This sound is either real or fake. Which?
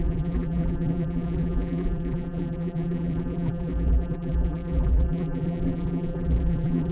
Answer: fake